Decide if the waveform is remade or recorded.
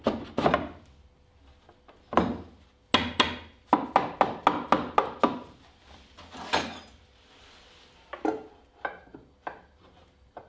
recorded